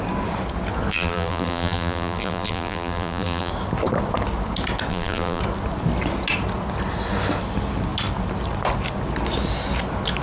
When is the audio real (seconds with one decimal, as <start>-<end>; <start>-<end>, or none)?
0.0-0.9; 3.5-4.9; 5.4-10.2